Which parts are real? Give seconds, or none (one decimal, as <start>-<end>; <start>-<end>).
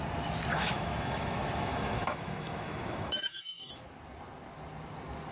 0.0-0.5; 3.7-5.3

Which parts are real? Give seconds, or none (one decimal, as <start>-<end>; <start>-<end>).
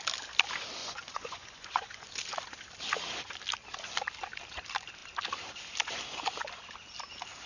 0.0-0.8; 2.1-7.5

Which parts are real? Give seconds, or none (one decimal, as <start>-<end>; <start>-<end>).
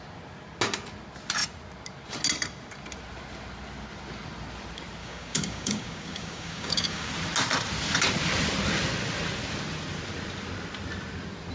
0.0-5.0; 7.1-11.5